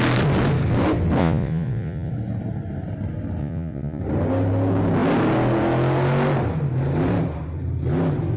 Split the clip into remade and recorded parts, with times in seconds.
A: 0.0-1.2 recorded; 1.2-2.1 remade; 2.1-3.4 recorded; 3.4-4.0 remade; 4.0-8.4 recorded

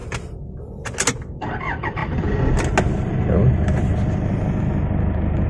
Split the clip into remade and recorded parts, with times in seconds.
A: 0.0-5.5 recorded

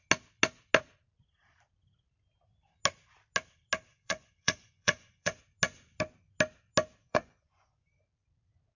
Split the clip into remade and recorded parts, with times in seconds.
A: 0.0-3.9 recorded; 3.9-5.4 remade; 5.4-7.0 recorded; 7.0-7.9 remade; 7.9-8.8 recorded

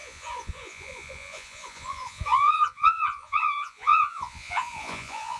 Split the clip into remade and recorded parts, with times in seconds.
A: 0.0-5.4 remade